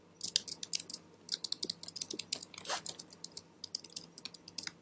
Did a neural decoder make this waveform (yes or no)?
no